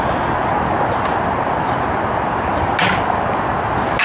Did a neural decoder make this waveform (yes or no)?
no